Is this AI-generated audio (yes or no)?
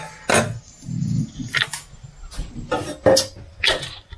no